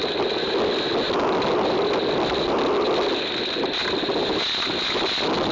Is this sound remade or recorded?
recorded